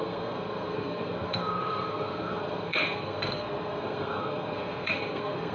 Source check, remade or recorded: remade